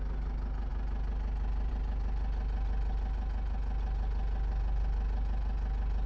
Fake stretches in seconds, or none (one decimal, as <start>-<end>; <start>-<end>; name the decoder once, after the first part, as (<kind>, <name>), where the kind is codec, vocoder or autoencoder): none